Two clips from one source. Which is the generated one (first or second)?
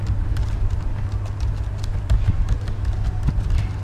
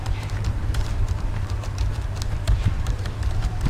second